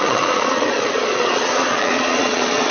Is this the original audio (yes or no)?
no